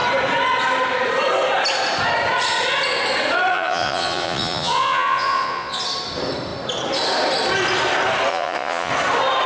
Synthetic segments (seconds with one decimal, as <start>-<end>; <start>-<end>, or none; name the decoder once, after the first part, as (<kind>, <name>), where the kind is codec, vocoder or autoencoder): 3.5-5.8 (vocoder, Vocos); 8.3-8.9